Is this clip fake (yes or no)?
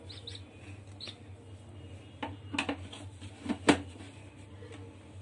no